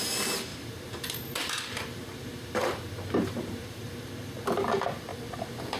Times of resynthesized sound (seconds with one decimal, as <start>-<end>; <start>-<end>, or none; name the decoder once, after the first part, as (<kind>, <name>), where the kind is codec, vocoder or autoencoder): 0.5-4.0 (vocoder, BigVGAN v2); 5.1-5.8